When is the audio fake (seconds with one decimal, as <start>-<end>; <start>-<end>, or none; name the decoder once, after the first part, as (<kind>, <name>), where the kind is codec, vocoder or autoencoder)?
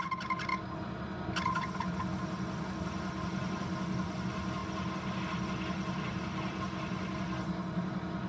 none